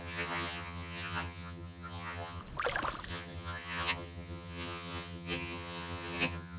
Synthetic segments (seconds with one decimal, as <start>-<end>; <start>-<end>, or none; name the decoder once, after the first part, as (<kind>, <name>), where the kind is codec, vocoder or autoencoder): 0.0-2.4 (vocoder, HiFi-GAN); 3.1-6.6